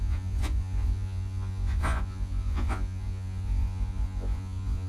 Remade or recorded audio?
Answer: remade